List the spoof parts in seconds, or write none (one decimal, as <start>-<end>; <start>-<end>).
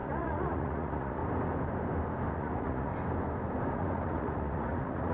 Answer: 0.0-1.2; 2.3-2.9; 3.7-5.1